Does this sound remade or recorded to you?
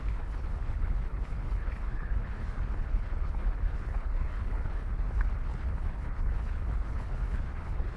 remade